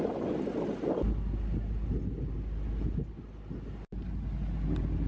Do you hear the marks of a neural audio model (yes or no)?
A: no